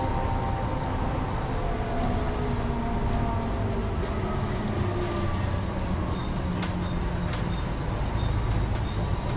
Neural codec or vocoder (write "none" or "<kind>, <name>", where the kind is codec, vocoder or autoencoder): none